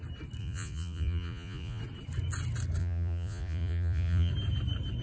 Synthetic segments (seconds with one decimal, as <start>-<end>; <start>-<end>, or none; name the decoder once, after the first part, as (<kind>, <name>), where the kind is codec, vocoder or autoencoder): 0.4-1.8 (vocoder, Vocos); 2.8-4.3